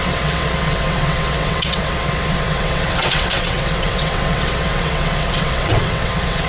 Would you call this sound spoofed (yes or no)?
yes